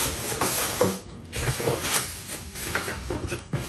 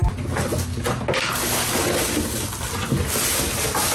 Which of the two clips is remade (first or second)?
first